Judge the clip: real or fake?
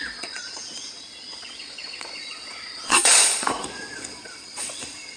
fake